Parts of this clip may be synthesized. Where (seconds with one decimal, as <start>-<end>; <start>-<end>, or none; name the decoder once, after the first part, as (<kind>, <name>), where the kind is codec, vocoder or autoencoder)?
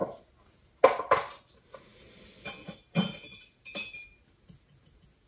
none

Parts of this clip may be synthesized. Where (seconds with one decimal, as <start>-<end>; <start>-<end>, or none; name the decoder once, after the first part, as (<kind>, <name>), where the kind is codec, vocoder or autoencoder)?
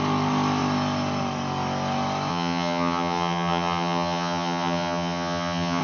2.3-5.8 (vocoder, HiFi-GAN)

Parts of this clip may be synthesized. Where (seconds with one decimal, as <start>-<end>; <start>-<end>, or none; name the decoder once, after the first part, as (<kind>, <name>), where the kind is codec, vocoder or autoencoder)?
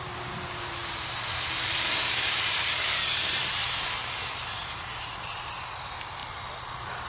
0.0-6.2 (vocoder, BigVGAN v2)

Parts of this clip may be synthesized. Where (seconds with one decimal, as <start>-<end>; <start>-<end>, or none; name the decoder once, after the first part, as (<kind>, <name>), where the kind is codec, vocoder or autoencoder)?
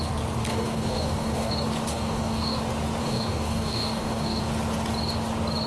0.5-1.5 (codec, DAC); 1.9-2.6; 3.0-4.4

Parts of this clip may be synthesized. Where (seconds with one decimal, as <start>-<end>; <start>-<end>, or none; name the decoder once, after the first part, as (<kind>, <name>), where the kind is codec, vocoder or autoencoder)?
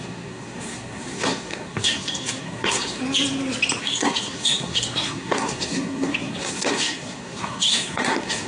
0.0-3.0 (codec, SNAC); 3.8-8.5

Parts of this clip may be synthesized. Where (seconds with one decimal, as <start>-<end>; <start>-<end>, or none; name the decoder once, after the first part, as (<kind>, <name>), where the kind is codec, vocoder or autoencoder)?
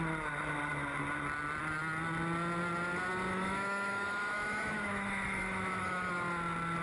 3.3-6.1 (autoencoder, DAC-VAE)